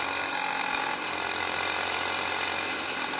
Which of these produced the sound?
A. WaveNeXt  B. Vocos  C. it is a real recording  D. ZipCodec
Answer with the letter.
C